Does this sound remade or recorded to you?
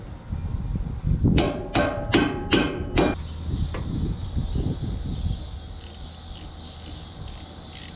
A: recorded